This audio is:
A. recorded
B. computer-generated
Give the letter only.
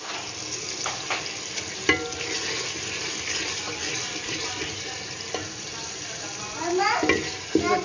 A